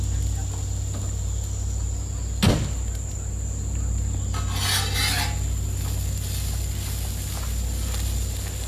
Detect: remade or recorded recorded